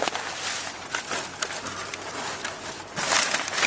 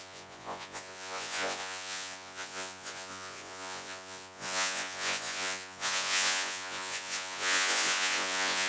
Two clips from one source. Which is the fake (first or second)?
second